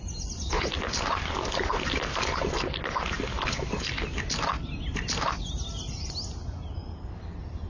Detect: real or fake real